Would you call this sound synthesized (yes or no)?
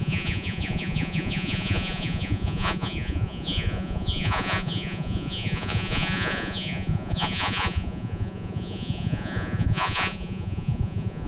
yes